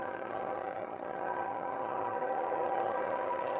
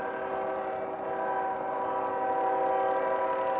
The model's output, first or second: first